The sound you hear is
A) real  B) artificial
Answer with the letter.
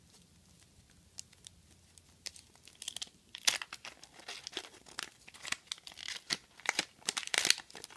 A